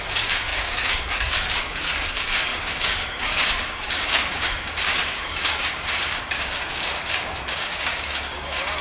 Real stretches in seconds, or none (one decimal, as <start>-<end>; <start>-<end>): none